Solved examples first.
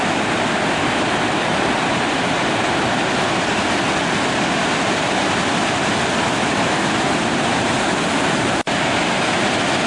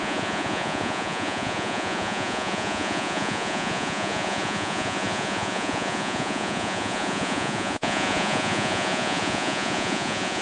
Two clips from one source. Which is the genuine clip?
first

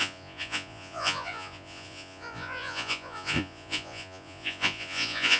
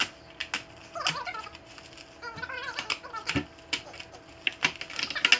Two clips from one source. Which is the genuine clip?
second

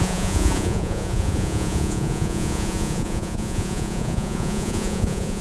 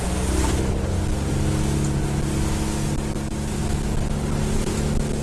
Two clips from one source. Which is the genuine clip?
second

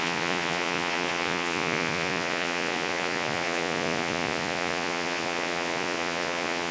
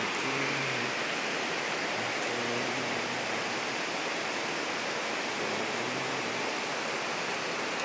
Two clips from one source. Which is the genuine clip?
second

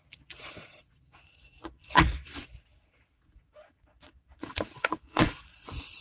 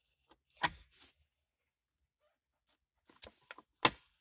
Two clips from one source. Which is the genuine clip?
second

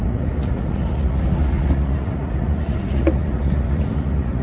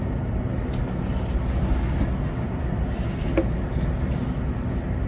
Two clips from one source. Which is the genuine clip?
second